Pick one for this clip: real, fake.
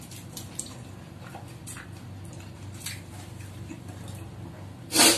fake